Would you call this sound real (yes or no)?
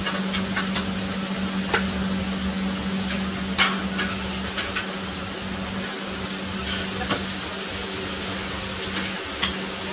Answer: yes